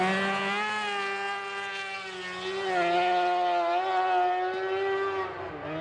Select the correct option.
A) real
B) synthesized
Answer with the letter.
A